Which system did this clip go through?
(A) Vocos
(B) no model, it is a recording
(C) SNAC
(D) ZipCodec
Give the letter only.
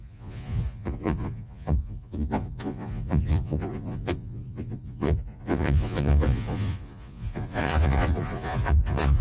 A